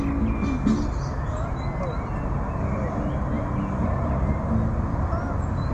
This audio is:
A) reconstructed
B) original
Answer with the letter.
B